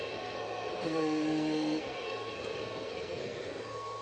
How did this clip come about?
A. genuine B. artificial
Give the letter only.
B